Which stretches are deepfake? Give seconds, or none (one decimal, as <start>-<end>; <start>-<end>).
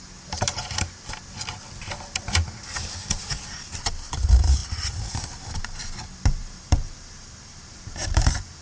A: 6.4-8.6